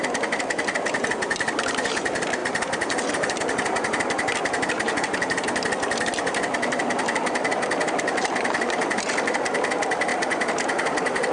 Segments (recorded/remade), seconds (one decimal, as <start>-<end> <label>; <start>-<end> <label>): 0.0-11.3 recorded